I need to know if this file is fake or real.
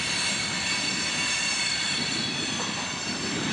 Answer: real